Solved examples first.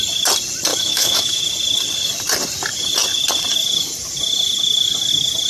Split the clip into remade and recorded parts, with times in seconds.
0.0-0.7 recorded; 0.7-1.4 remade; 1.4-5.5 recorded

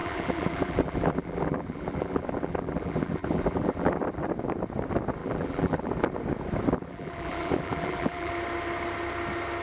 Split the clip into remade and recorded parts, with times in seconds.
0.0-4.2 remade; 4.2-5.2 recorded; 5.2-5.9 remade; 5.9-6.7 recorded; 6.7-8.3 remade; 8.3-9.6 recorded